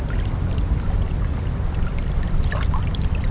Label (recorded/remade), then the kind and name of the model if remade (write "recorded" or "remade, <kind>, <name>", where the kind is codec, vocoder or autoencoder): recorded